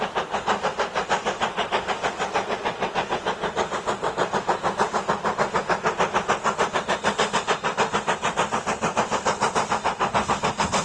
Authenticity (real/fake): real